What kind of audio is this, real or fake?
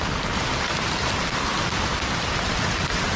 real